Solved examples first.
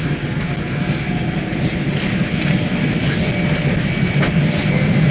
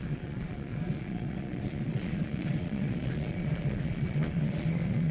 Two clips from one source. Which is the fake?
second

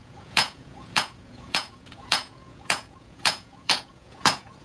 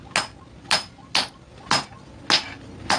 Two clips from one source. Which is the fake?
first